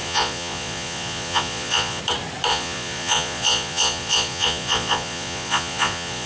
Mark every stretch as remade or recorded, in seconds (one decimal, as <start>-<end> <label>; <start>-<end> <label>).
0.0-2.0 remade; 2.0-2.5 recorded; 2.5-6.3 remade